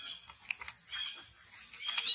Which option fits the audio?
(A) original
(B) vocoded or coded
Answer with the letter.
A